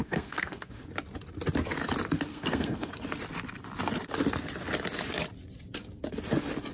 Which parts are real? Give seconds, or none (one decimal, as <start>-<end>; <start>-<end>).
0.8-2.3; 2.9-6.7